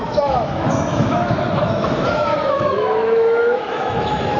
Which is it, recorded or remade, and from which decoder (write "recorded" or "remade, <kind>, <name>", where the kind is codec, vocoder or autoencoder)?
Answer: remade, autoencoder, DAC-VAE